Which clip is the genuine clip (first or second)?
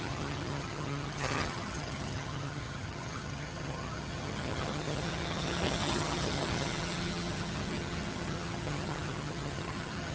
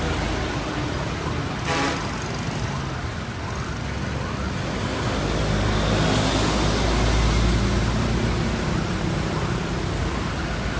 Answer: second